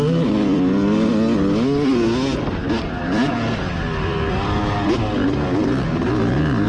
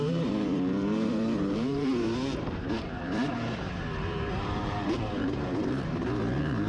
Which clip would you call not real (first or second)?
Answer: second